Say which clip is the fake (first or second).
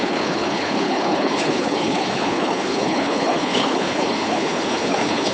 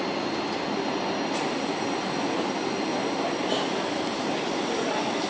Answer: first